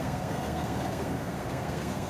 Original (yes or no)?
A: no